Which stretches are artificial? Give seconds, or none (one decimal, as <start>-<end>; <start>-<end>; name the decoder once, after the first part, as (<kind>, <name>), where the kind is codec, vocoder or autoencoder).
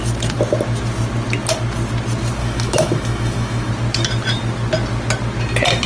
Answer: 2.4-3.7 (autoencoder, DAC-VAE)